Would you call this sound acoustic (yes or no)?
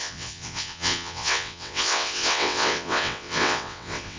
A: no